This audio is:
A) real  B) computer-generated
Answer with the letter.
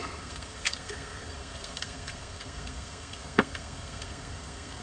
B